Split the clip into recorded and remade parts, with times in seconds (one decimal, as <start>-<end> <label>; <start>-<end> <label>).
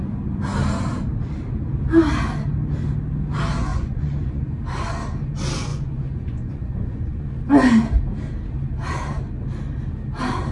0.0-3.7 recorded; 3.7-4.4 remade; 4.4-5.7 recorded; 5.7-7.4 remade; 7.4-10.5 recorded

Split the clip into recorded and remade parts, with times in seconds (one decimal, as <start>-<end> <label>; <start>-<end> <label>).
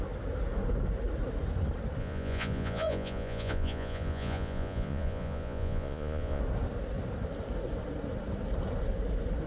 0.0-2.0 recorded; 2.0-6.4 remade; 6.4-9.5 recorded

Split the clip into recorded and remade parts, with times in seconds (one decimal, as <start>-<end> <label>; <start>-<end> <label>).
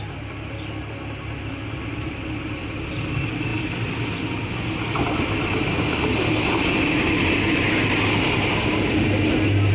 0.0-9.7 recorded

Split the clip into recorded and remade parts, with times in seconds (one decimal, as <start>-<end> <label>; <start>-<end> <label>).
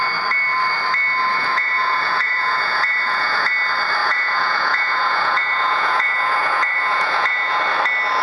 0.0-1.3 recorded; 1.3-3.5 remade; 3.5-4.0 recorded; 4.0-7.6 remade; 7.6-8.2 recorded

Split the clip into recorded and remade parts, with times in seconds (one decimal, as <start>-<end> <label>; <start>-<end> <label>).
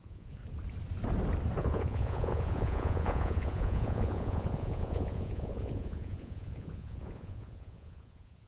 0.0-0.4 remade; 0.4-1.6 recorded; 1.6-8.5 remade